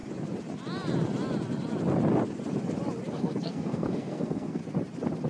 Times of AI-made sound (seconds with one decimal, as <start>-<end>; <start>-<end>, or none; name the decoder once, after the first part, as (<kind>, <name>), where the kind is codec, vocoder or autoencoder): 3.1-4.6 (codec, SNAC)